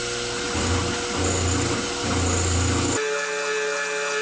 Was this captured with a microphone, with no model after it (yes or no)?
yes